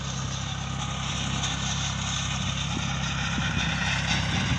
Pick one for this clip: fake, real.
real